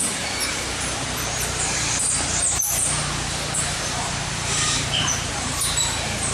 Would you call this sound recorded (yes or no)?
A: no